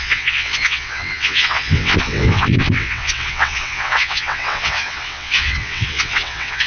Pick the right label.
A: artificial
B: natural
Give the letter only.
A